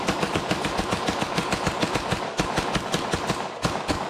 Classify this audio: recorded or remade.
remade